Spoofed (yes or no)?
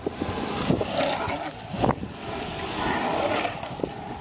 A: no